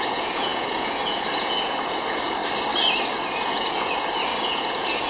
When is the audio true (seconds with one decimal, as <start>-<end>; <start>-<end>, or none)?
2.4-3.2